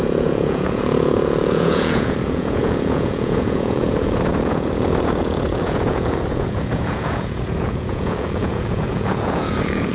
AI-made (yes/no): yes